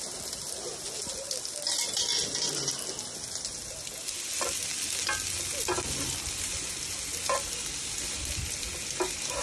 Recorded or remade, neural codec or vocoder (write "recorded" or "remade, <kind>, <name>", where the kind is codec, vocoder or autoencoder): recorded